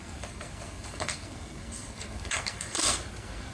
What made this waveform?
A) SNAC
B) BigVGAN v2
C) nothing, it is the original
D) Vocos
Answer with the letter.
A